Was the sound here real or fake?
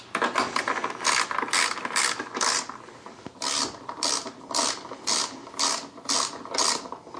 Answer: real